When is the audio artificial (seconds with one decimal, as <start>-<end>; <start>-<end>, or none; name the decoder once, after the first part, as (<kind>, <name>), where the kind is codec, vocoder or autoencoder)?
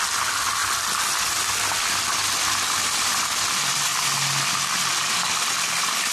none